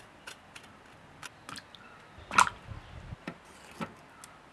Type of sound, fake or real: real